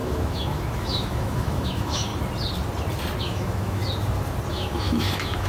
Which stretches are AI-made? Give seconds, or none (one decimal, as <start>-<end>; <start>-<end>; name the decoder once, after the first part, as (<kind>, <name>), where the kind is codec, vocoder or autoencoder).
0.0-2.1 (autoencoder, DAC-VAE); 3.2-3.8; 4.5-5.5